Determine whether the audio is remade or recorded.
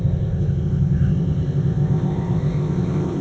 remade